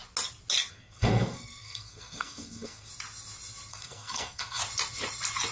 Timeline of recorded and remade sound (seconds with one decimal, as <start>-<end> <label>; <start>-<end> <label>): 0.0-0.7 recorded; 0.7-2.9 remade; 2.9-3.7 recorded; 3.7-4.6 remade; 4.6-5.5 recorded